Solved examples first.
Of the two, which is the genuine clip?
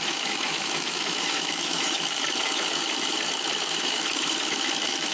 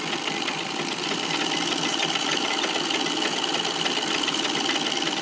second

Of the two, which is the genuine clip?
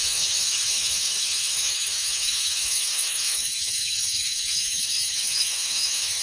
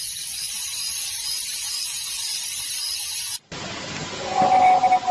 second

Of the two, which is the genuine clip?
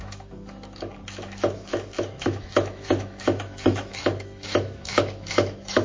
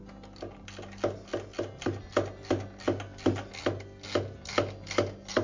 second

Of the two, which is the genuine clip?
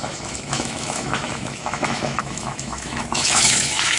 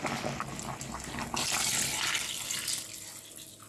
second